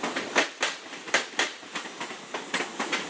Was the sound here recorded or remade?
recorded